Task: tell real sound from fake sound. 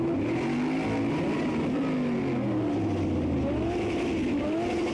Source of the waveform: real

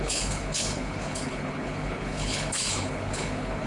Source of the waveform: fake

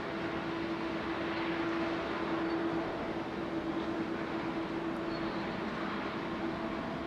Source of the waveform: real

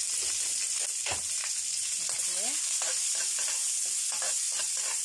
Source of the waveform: real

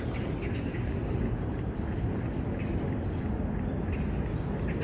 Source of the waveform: real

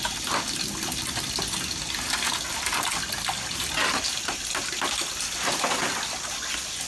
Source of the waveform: real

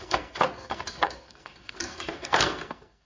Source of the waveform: fake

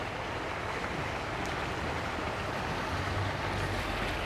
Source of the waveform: real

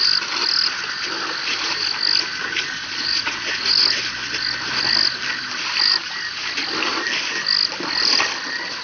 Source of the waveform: real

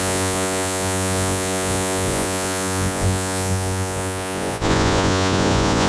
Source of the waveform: fake